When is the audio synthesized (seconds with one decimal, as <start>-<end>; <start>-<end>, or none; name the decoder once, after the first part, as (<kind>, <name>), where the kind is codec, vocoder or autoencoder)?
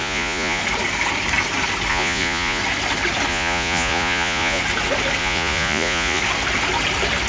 0.0-0.6 (vocoder, Vocos); 1.9-2.6; 3.3-4.6; 5.2-6.2